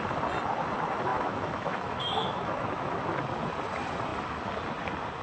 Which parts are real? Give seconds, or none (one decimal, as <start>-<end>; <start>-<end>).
0.0-1.1; 2.9-5.2